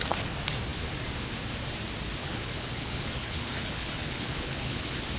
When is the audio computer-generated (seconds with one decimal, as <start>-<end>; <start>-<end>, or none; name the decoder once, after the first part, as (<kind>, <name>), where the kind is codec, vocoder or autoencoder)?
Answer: 2.2-4.8 (codec, HILCodec)